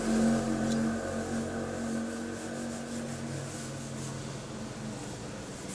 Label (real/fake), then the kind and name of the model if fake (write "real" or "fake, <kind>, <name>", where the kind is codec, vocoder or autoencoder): real